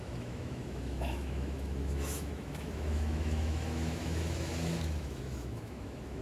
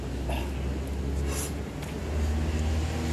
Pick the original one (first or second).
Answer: second